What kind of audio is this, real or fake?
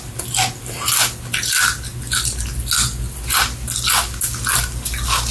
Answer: real